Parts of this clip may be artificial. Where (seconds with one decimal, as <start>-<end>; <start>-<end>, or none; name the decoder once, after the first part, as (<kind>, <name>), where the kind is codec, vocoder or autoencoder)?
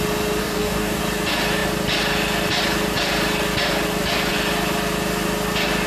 0.4-1.0 (codec, DAC)